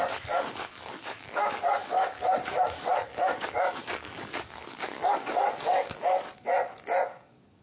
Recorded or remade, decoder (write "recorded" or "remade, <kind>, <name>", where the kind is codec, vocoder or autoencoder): remade, codec, DAC